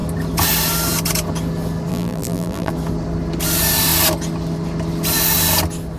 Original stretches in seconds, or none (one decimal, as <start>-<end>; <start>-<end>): 0.0-1.9; 2.7-6.0